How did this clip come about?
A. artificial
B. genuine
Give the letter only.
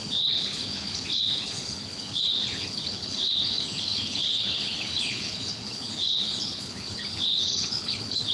A